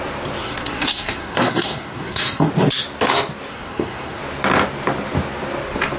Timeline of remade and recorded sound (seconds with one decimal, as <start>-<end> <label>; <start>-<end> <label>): 0.0-0.4 recorded; 0.4-2.5 remade; 2.5-3.5 recorded; 3.5-4.2 remade; 4.2-6.0 recorded